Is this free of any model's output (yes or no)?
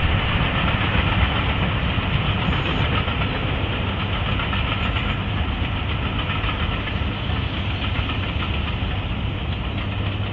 yes